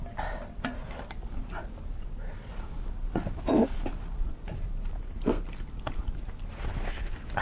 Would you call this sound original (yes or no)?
no